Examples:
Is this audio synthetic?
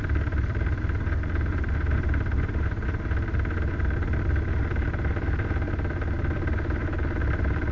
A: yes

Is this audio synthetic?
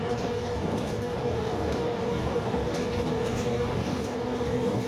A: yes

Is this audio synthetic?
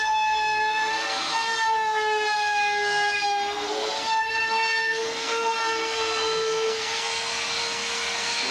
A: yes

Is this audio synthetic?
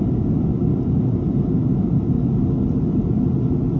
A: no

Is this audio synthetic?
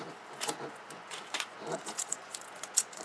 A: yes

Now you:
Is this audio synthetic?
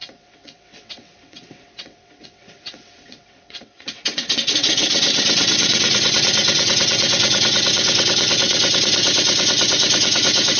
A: yes